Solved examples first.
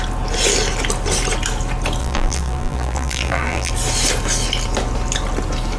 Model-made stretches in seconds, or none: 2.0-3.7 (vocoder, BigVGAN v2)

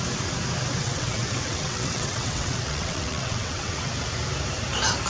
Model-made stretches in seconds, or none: 0.8-3.9 (vocoder, WaveNeXt)

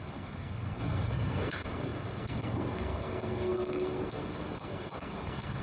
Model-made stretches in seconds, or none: 0.0-5.6 (codec, SNAC)

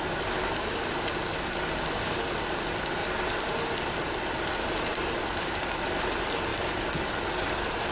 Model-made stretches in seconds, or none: 3.0-4.5 (vocoder, BigVGAN v2); 6.5-7.9

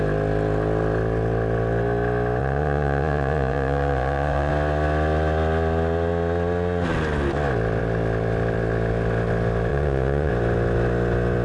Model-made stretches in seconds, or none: 2.4-4.5 (vocoder, Vocos); 9.7-10.3

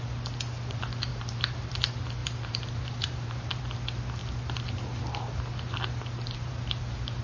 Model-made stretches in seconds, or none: 1.1-1.7 (vocoder, BigVGAN v2); 2.2-3.6